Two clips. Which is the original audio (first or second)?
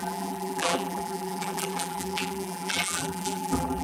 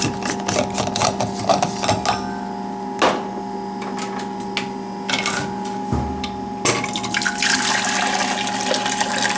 second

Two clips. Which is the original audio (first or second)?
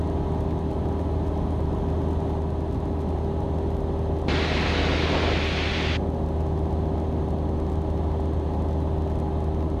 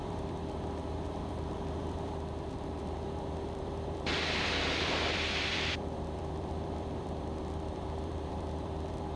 first